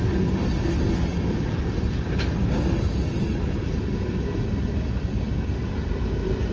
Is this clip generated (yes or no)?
no